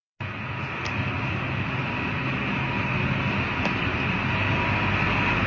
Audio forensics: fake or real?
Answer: real